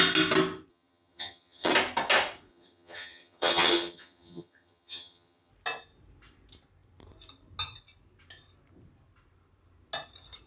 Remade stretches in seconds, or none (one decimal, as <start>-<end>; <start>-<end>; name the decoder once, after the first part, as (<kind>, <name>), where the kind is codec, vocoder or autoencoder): 0.7-1.7 (vocoder, HiFi-GAN); 2.5-5.5